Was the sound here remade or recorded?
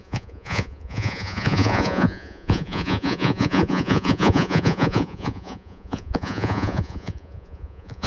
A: remade